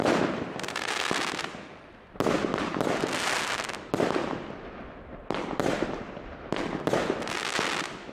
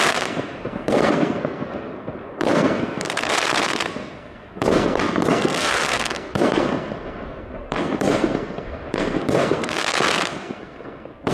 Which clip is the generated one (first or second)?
second